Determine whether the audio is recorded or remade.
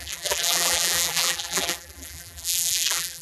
remade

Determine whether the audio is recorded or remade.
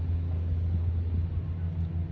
recorded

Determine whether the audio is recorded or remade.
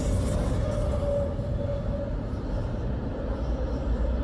recorded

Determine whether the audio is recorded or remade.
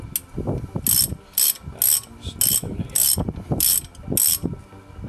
recorded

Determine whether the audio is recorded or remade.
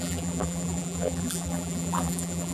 remade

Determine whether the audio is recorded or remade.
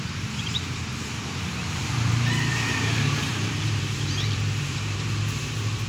remade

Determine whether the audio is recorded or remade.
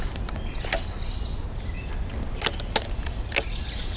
recorded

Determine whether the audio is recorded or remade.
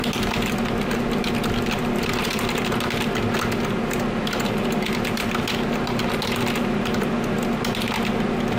recorded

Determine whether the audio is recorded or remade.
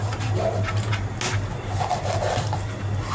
recorded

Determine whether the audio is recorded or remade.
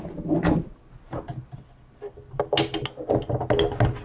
recorded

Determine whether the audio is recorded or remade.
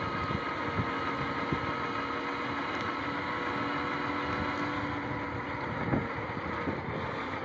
recorded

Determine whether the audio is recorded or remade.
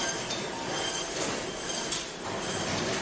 remade